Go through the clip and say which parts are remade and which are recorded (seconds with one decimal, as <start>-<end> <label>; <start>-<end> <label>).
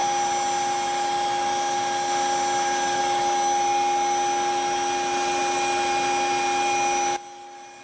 0.0-7.8 recorded